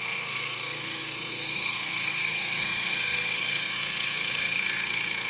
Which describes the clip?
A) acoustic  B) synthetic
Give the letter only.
B